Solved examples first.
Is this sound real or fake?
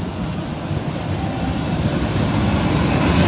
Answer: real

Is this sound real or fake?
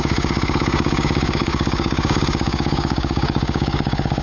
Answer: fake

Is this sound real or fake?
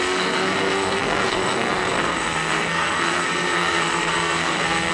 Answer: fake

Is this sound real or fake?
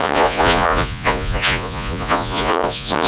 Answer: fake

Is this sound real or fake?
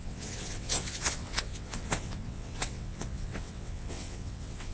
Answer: fake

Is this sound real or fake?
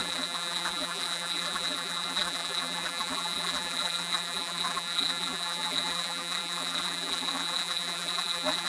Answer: fake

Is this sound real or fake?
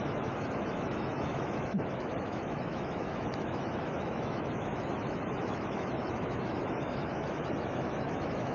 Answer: fake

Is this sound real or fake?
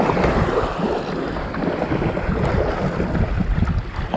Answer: real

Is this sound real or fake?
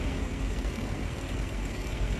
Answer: fake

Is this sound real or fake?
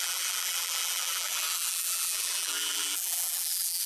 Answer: fake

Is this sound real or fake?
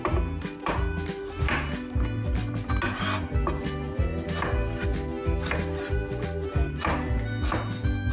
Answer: real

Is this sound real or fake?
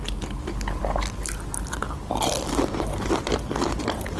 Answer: real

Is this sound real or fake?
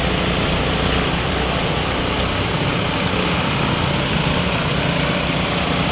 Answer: real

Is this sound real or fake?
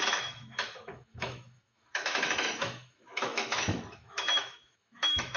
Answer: fake